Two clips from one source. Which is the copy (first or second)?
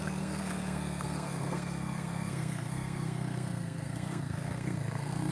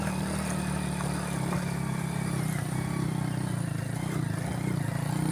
first